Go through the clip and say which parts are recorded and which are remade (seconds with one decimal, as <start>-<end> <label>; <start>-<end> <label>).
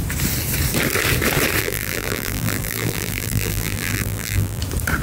0.0-1.6 recorded; 1.6-4.6 remade; 4.6-5.0 recorded